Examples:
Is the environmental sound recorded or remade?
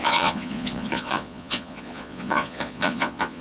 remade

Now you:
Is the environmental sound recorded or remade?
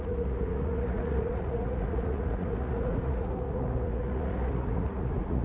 remade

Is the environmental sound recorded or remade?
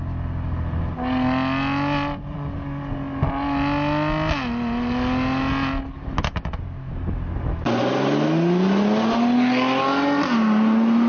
recorded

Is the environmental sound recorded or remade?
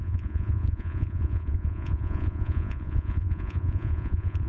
remade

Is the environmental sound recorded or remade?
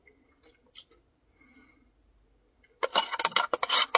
recorded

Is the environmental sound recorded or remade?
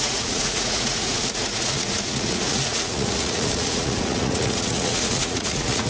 remade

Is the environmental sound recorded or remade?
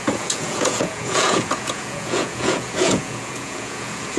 remade